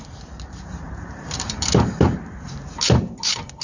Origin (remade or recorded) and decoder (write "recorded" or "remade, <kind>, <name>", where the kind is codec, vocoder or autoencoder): remade, vocoder, BigVGAN v2